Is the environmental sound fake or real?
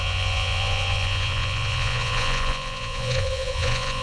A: fake